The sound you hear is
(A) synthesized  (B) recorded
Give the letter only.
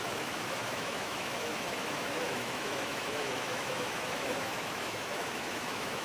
A